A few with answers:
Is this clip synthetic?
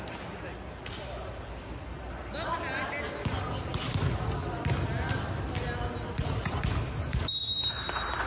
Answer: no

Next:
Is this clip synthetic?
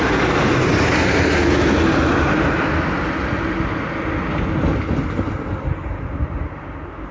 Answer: no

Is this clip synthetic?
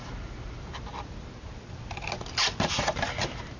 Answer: no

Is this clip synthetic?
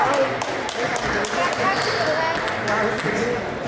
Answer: no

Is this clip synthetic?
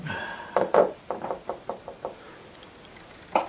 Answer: no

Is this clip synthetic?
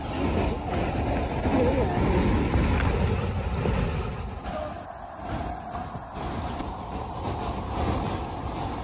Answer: no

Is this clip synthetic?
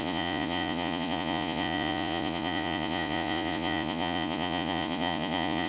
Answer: yes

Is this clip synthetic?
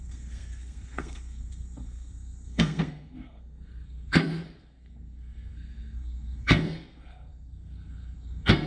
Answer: yes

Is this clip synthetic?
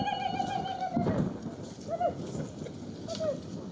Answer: no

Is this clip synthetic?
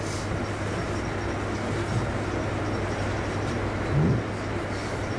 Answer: no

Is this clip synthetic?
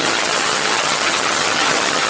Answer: yes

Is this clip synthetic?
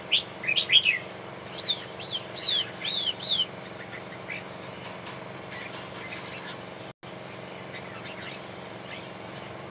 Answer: no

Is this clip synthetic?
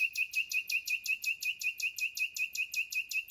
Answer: no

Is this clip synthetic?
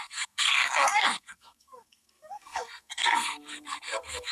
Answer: yes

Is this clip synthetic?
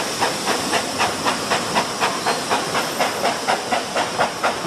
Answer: no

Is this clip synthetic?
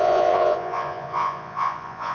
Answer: yes